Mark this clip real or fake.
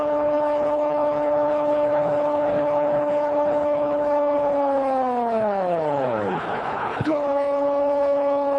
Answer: fake